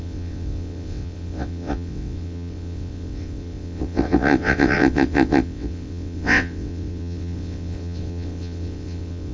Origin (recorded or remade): remade